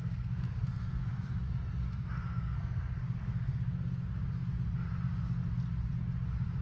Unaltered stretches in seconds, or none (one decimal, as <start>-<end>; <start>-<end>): 4.0-6.6